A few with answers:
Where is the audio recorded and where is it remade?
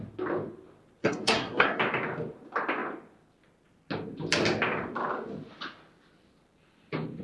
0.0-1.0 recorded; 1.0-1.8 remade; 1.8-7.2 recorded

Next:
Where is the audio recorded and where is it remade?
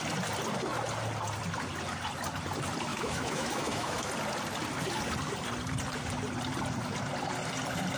0.0-2.9 recorded; 2.9-4.1 remade; 4.1-8.0 recorded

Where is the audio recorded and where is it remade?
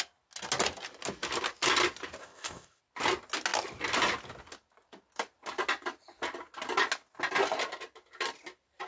0.0-2.2 recorded; 2.2-2.8 remade; 2.8-8.9 recorded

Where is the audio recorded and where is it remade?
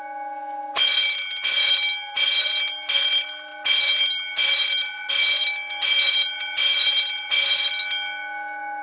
0.0-8.8 recorded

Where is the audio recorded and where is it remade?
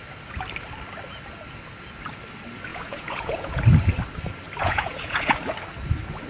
0.0-2.7 recorded; 2.7-3.6 remade; 3.6-4.6 recorded; 4.6-5.4 remade; 5.4-6.3 recorded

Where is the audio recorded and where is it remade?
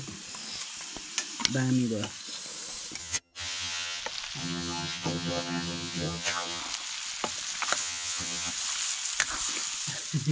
0.0-3.0 recorded; 3.0-4.0 remade; 4.0-4.4 recorded; 4.4-6.6 remade; 6.6-7.8 recorded; 7.8-8.5 remade; 8.5-10.3 recorded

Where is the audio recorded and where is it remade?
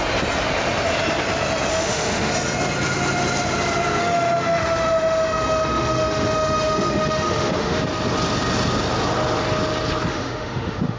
0.0-1.7 recorded; 1.7-2.3 remade; 2.3-4.0 recorded; 4.0-7.8 remade; 7.8-10.1 recorded; 10.1-11.0 remade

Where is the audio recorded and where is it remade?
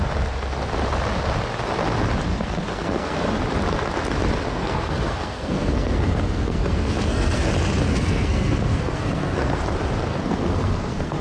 0.0-2.3 recorded; 2.3-3.3 remade; 3.3-4.5 recorded; 4.5-7.5 remade; 7.5-7.9 recorded; 7.9-9.6 remade; 9.6-10.1 recorded; 10.1-11.2 remade